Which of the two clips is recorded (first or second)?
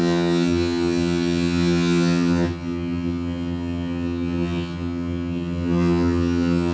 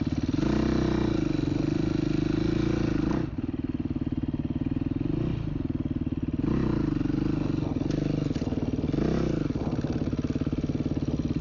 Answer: second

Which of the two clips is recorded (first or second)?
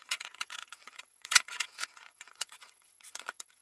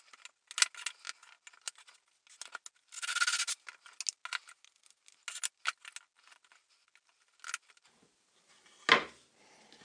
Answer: second